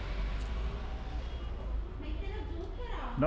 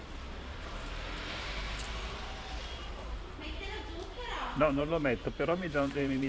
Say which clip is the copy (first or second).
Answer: second